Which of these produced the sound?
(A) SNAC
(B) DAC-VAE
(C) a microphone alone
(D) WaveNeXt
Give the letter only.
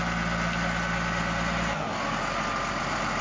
C